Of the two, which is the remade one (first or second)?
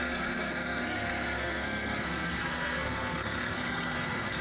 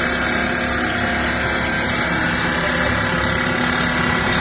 first